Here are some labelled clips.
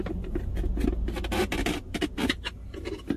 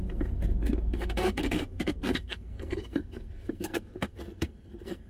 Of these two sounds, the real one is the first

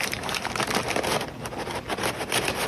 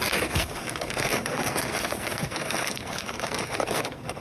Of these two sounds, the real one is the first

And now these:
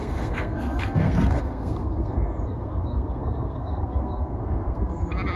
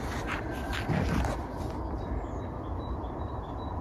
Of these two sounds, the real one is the second